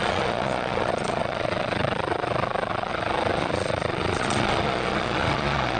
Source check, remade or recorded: remade